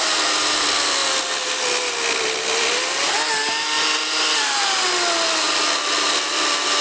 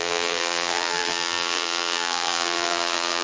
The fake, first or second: second